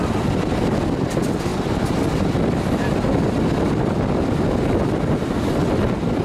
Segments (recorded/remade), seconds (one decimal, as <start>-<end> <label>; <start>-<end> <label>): 0.0-6.2 recorded

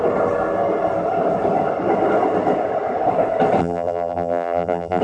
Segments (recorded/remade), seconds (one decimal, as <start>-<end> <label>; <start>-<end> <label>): 0.0-3.6 recorded; 3.6-5.0 remade

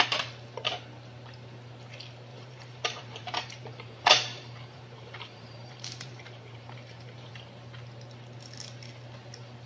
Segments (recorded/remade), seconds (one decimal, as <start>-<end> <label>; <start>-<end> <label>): 0.0-2.3 recorded; 2.3-7.3 remade; 7.3-9.7 recorded

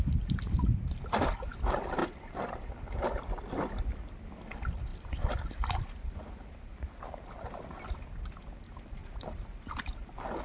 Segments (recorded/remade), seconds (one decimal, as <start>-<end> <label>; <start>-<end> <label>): 0.0-10.4 remade

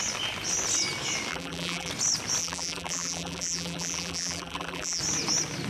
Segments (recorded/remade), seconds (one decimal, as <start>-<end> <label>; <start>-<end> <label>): 0.0-1.3 recorded; 1.3-1.9 remade; 1.9-2.4 recorded; 2.4-5.0 remade; 5.0-5.7 recorded

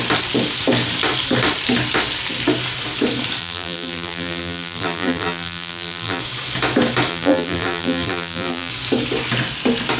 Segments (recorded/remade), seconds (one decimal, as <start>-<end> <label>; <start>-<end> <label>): 0.0-3.4 recorded; 3.4-6.2 remade; 6.2-7.1 recorded; 7.1-8.7 remade; 8.7-10.0 recorded

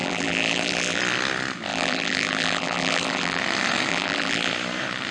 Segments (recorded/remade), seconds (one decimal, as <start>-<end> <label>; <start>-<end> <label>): 0.0-1.0 remade; 1.0-1.7 recorded; 1.7-3.4 remade; 3.4-3.9 recorded; 3.9-4.5 remade; 4.5-5.1 recorded

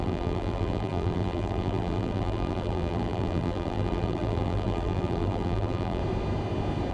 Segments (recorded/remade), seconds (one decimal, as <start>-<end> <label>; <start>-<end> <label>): 0.0-6.0 remade; 6.0-6.9 recorded